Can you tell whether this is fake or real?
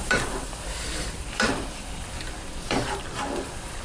fake